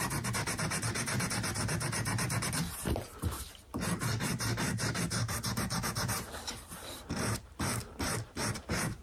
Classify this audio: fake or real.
fake